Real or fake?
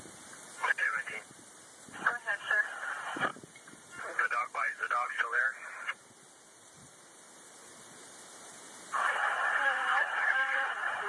fake